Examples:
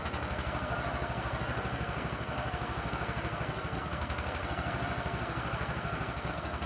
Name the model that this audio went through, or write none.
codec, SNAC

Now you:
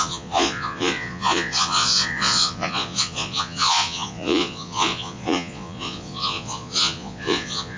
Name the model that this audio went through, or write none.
vocoder, Vocos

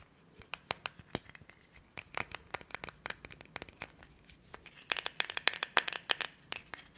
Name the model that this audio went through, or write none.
none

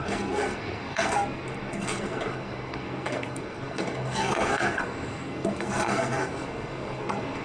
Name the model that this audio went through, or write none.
codec, SNAC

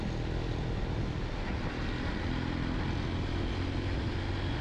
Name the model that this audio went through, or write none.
none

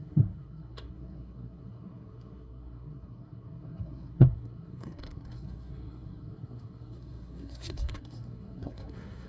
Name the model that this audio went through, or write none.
codec, SNAC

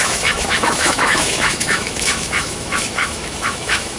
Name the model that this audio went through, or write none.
autoencoder, DAC-VAE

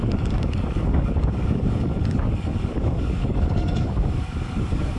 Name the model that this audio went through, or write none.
codec, DAC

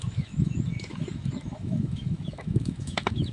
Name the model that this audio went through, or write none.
autoencoder, DAC-VAE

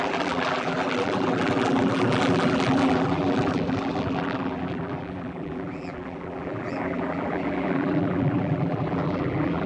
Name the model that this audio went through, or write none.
vocoder, BigVGAN v2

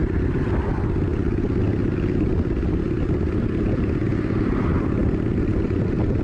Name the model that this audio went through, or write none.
none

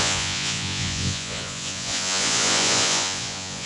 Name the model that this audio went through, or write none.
vocoder, Vocos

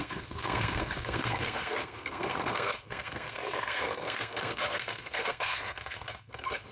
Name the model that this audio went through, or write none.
codec, SNAC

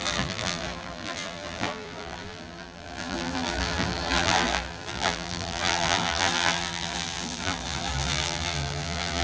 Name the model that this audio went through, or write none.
vocoder, BigVGAN v2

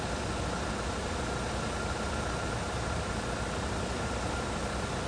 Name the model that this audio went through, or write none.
none